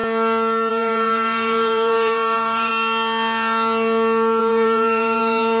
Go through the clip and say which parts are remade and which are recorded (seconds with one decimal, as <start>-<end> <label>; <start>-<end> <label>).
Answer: 0.0-0.7 recorded; 0.7-2.7 remade; 2.7-4.4 recorded; 4.4-5.6 remade

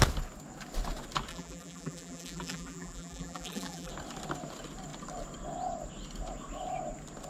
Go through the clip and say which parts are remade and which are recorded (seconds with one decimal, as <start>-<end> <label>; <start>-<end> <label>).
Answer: 0.0-1.3 recorded; 1.3-3.9 remade; 3.9-7.3 recorded

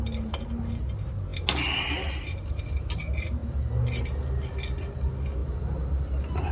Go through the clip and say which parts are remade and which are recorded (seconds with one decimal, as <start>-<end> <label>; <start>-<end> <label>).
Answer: 0.0-5.4 recorded; 5.4-6.5 remade